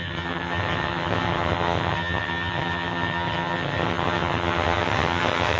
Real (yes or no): no